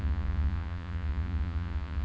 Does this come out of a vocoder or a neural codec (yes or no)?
yes